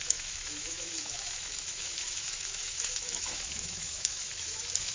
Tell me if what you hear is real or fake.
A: fake